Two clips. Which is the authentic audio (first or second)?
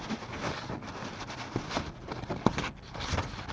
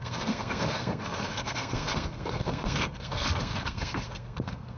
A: first